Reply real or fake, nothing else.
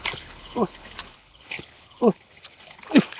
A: fake